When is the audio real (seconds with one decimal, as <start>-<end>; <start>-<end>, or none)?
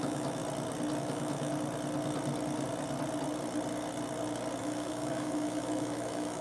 0.4-1.0; 1.5-4.6